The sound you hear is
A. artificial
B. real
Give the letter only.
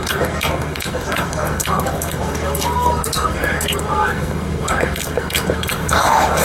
A